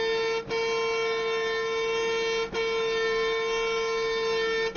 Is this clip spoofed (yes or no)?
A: no